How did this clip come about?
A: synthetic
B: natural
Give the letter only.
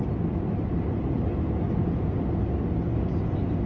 B